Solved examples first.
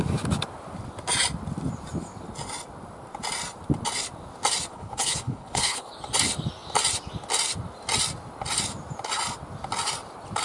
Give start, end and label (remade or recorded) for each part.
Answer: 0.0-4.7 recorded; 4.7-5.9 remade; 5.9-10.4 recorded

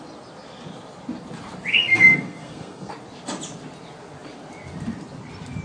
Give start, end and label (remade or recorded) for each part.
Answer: 0.0-1.7 recorded; 1.7-2.9 remade; 2.9-5.6 recorded

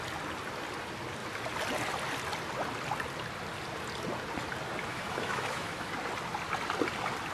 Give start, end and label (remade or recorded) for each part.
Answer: 0.0-4.9 recorded; 4.9-5.9 remade; 5.9-7.3 recorded

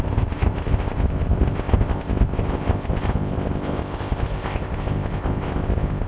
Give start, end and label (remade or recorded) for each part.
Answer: 0.0-6.1 remade

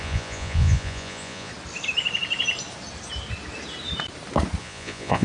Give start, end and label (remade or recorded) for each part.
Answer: 0.0-1.5 remade; 1.5-4.6 recorded; 4.6-5.2 remade